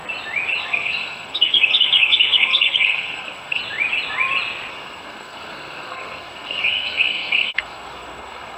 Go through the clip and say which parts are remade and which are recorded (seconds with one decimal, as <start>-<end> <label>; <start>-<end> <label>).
0.0-0.6 recorded; 0.6-3.6 remade; 3.6-4.7 recorded; 4.7-8.6 remade